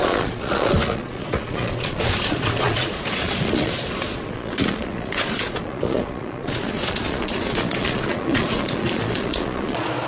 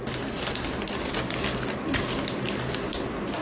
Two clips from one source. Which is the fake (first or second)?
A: first